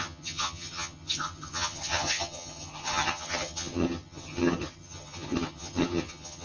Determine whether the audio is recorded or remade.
remade